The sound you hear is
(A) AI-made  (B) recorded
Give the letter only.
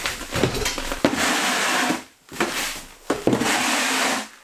B